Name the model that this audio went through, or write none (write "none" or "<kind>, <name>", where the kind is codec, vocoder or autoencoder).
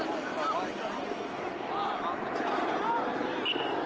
none